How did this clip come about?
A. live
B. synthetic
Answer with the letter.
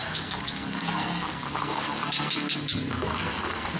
B